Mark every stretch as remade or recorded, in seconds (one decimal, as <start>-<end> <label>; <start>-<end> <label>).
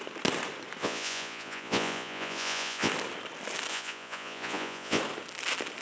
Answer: 0.0-0.8 recorded; 0.8-2.9 remade; 2.9-3.7 recorded; 3.7-5.0 remade; 5.0-5.8 recorded